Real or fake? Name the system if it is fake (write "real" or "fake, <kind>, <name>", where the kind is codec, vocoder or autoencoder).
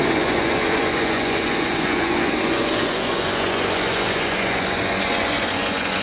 fake, vocoder, Vocos